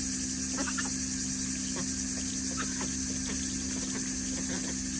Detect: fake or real real